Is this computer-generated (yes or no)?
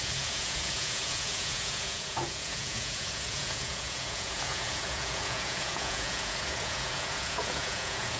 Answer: yes